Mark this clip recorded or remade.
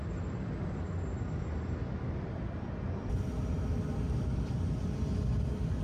recorded